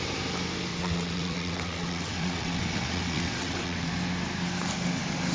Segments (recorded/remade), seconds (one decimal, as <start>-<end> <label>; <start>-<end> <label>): 0.0-0.7 recorded; 0.7-3.9 remade; 3.9-5.3 recorded